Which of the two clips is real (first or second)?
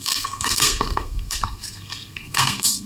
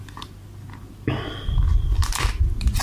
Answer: second